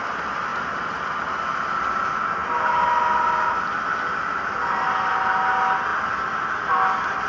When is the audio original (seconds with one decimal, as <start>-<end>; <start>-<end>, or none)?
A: 0.0-7.3